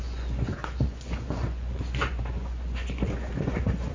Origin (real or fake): fake